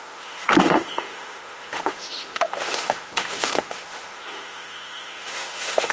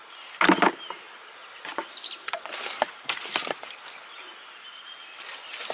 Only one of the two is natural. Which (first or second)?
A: second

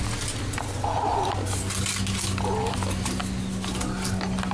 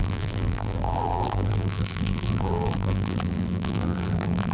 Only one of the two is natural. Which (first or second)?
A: first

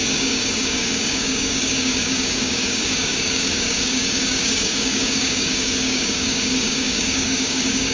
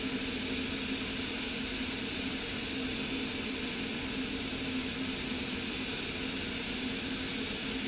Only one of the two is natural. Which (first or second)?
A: second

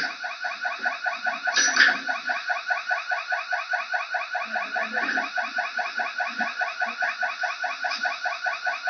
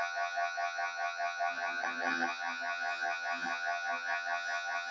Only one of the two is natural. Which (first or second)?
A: first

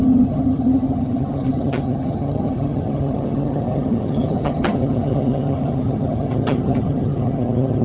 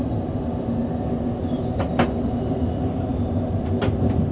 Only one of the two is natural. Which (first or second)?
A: second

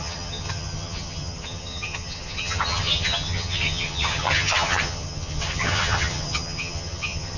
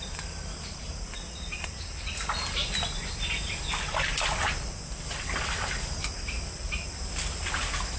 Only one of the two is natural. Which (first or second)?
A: second